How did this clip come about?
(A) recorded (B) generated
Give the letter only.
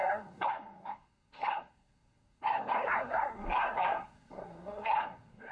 B